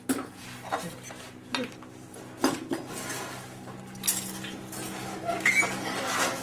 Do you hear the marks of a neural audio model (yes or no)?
no